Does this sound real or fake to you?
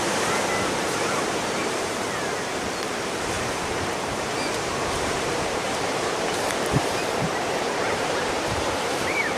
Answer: fake